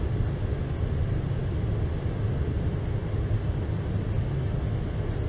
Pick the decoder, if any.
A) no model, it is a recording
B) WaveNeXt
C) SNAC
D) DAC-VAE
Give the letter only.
A